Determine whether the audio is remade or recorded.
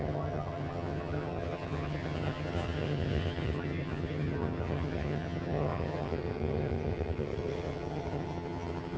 remade